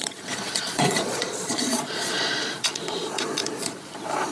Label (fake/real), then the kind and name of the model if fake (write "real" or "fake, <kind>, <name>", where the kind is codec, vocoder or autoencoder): fake, vocoder, Vocos